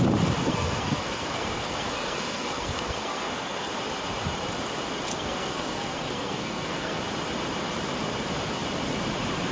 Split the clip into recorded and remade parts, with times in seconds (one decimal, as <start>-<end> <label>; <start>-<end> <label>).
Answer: 0.0-0.4 recorded; 0.4-3.7 remade; 3.7-5.1 recorded; 5.1-7.0 remade; 7.0-9.5 recorded